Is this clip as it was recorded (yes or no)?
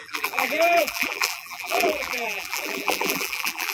no